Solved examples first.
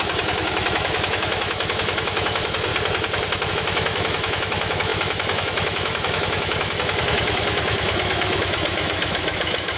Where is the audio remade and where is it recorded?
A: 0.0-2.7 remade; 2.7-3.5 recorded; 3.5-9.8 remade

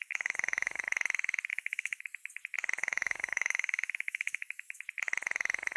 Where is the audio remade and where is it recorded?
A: 0.0-0.8 remade; 0.8-1.5 recorded; 1.5-2.0 remade; 2.0-2.8 recorded; 2.8-4.8 remade; 4.8-5.8 recorded